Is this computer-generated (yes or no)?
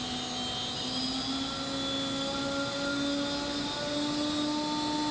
no